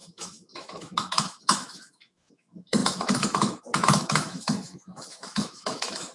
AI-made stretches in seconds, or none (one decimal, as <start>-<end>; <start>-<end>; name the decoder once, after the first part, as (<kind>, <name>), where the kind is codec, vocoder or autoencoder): 0.0-6.1 (autoencoder, DAC-VAE)